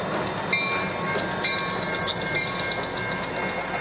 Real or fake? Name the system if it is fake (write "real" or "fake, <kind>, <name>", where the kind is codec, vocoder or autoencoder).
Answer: real